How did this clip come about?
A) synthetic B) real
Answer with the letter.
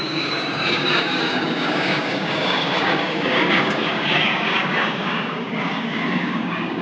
A